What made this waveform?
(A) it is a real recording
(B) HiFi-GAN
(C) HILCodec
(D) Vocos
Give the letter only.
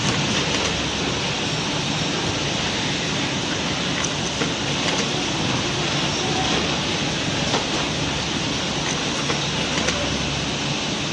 A